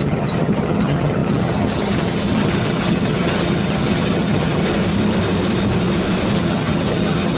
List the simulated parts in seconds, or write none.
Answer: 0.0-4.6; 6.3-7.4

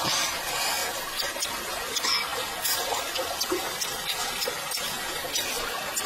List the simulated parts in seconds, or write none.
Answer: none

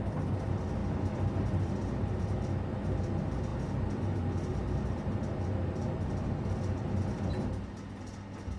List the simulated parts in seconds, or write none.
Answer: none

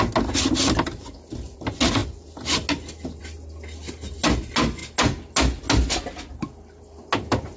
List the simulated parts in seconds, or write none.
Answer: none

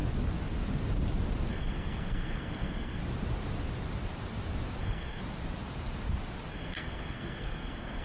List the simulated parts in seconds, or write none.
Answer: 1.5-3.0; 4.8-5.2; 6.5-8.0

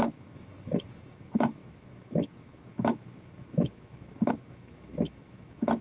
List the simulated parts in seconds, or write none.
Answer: 0.0-5.8

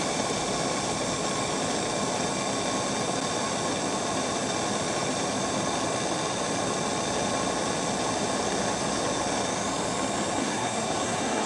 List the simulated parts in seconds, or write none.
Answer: 10.4-11.5